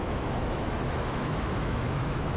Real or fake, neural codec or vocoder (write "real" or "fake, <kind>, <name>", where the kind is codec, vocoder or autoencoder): fake, autoencoder, DAC-VAE